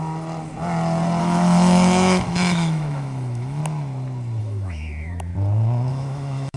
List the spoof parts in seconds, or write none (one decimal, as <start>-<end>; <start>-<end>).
1.2-3.6; 4.4-5.3; 5.9-6.6